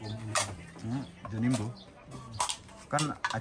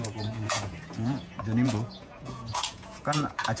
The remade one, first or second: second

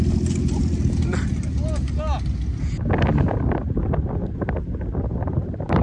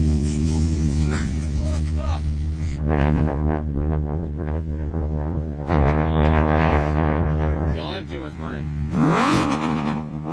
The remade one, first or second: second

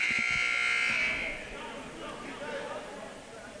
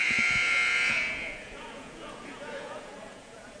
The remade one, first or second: second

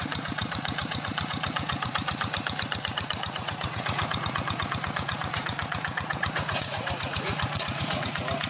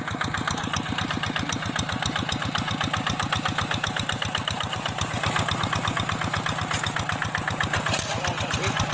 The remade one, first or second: first